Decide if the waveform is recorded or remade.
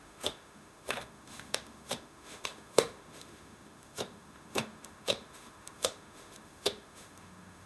remade